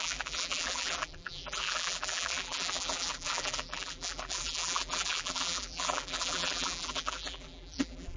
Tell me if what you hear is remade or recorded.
remade